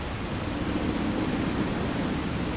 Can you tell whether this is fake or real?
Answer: real